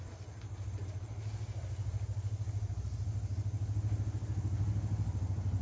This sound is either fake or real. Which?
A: real